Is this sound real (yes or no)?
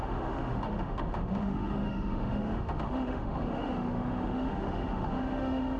no